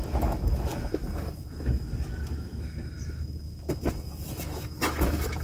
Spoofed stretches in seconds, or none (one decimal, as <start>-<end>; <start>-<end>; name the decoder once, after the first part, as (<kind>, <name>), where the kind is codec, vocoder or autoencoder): 0.0-5.4 (autoencoder, DAC-VAE)